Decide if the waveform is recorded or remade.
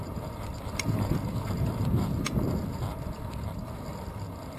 remade